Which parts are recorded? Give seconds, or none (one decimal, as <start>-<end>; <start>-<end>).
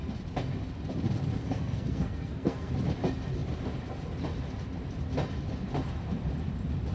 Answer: 0.0-1.4; 2.7-6.9